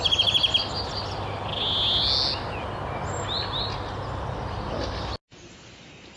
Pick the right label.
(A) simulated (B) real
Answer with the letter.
B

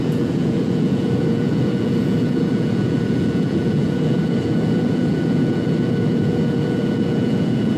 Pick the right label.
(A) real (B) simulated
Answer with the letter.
B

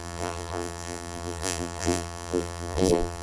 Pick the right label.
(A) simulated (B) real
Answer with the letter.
A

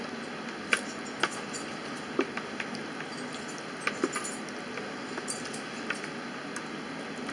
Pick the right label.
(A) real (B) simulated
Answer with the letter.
A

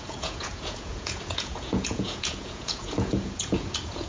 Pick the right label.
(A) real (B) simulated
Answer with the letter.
B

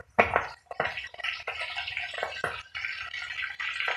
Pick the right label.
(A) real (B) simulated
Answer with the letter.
A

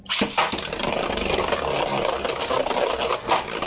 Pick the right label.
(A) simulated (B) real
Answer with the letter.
B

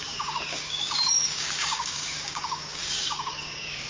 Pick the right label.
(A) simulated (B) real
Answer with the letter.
A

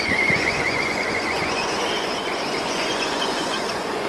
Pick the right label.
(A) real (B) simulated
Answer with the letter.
B